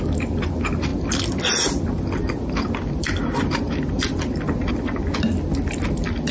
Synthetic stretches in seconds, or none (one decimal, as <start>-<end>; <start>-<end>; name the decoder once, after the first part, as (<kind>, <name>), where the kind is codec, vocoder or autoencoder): none